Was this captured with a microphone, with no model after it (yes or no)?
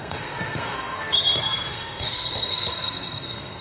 no